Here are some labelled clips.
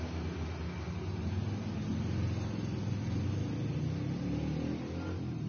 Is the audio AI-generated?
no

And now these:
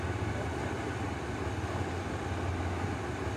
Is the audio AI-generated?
no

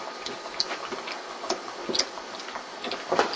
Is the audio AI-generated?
yes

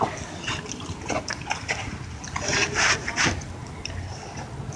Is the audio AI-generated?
no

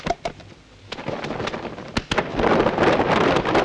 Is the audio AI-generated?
no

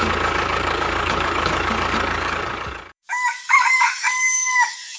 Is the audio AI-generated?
yes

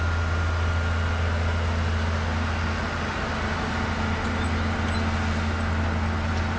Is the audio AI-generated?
no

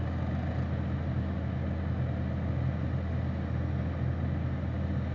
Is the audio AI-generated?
no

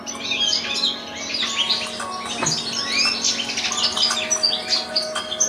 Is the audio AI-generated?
no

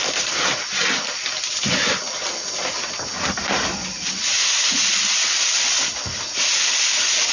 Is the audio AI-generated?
no